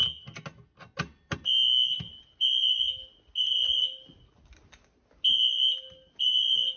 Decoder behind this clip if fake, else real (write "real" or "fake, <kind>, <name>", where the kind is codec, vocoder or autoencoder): real